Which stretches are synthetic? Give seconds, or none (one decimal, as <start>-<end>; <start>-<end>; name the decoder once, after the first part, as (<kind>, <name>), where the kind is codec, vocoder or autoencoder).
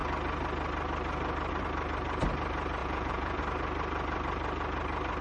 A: 2.8-3.4 (vocoder, Vocos)